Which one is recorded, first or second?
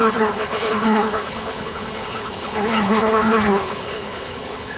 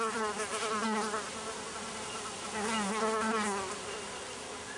second